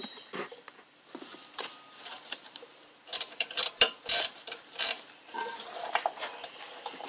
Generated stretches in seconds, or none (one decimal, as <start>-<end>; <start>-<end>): 0.0-7.1